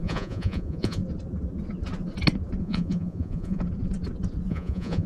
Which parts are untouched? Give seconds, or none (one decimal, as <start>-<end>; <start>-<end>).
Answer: 1.0-2.6; 3.6-4.5

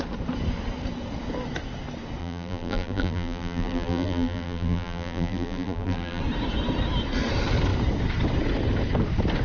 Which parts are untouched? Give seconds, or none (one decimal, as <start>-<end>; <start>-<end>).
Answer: 0.0-2.2; 6.2-9.4

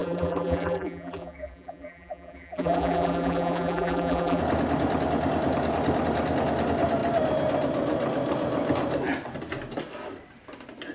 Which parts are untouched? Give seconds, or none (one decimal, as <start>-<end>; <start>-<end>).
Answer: 4.4-10.9

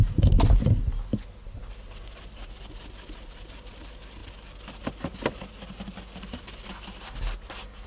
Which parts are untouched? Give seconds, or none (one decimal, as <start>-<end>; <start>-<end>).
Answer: 0.0-7.9